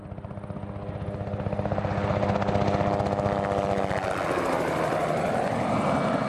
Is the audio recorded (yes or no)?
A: yes